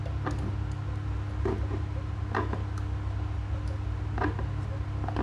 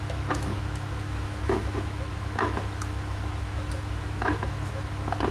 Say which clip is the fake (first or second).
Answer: second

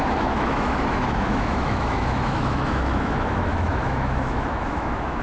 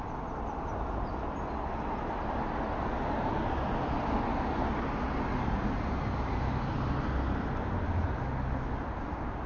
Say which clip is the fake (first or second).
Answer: first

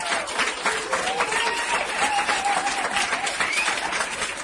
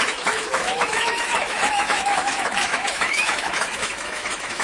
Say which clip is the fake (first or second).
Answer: second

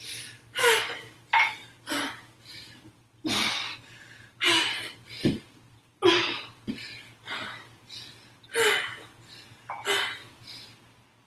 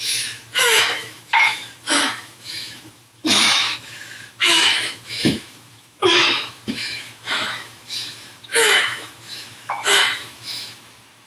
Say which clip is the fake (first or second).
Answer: second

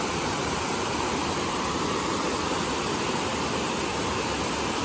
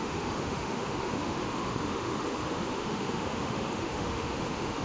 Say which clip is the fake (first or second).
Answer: second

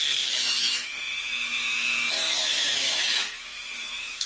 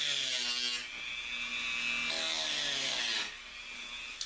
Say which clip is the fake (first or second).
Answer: first